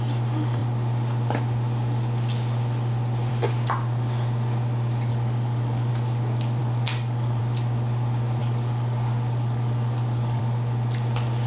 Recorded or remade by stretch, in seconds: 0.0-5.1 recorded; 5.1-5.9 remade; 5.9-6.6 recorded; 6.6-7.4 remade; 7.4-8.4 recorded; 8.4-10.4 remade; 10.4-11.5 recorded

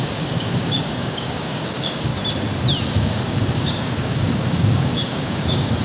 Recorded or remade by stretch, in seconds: 0.0-2.1 remade; 2.1-2.9 recorded; 2.9-5.8 remade